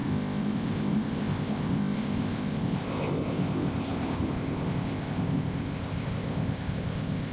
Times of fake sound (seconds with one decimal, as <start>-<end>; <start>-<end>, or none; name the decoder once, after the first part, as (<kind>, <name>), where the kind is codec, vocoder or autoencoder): 0.0-7.3 (codec, ZipCodec)